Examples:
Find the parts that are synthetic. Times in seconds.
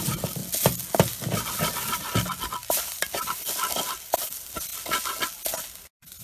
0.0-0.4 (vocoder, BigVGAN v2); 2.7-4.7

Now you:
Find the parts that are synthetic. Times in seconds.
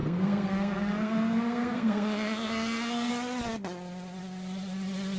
0.0-3.1 (codec, SNAC)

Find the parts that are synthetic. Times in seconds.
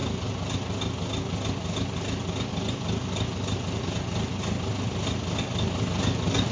none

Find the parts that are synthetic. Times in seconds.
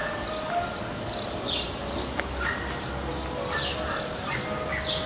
none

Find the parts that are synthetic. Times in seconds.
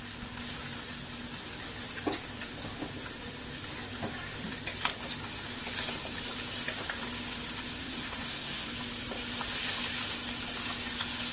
7.8-8.7 (codec, SNAC)